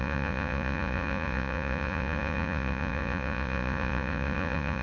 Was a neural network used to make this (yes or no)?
yes